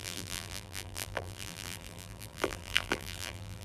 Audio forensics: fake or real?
fake